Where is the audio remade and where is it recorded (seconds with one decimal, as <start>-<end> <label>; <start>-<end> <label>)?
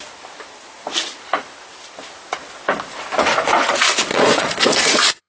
0.0-4.1 recorded; 4.1-5.3 remade